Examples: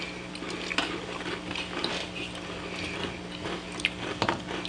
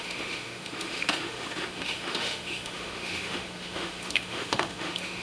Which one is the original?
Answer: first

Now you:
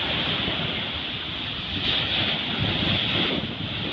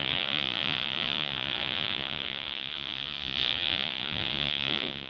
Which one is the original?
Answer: first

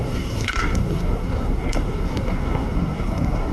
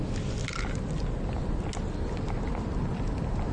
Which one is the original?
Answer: second